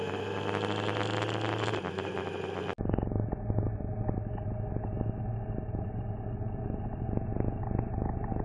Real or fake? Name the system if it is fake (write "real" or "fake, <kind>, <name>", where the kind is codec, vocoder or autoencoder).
real